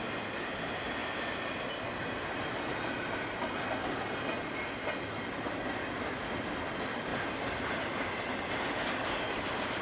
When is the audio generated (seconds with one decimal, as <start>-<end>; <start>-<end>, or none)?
none